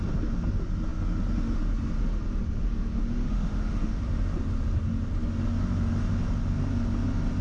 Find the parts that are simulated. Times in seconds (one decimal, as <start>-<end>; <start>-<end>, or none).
3.0-4.0